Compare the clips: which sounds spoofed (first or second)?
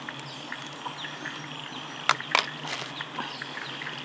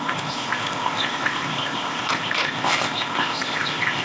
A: second